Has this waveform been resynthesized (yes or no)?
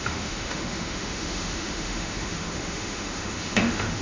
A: yes